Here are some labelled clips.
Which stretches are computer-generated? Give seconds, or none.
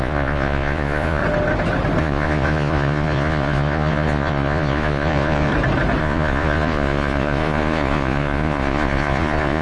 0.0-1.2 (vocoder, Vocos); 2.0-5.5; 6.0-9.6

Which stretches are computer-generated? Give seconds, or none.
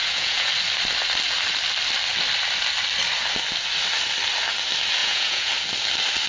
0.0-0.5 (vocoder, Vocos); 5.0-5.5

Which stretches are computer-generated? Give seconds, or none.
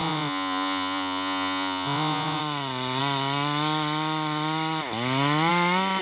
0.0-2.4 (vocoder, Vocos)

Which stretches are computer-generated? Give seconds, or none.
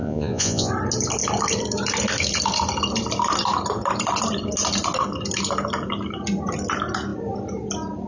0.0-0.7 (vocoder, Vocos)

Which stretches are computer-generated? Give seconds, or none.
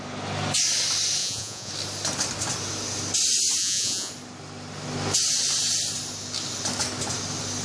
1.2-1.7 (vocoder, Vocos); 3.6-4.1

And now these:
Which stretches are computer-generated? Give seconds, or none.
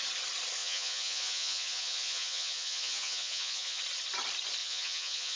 0.6-3.8 (vocoder, Vocos); 4.6-5.4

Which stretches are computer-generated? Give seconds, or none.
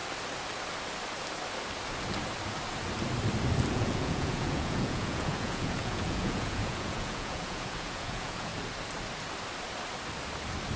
3.7-8.5 (vocoder, Vocos)